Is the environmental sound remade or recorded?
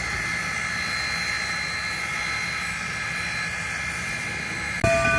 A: recorded